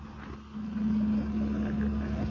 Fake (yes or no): no